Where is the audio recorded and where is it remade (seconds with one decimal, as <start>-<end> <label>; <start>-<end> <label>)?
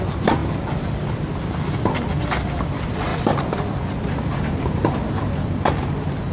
0.0-3.1 recorded; 3.1-5.1 remade; 5.1-6.3 recorded